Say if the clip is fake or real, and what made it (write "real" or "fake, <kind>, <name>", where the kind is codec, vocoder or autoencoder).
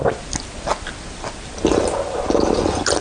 real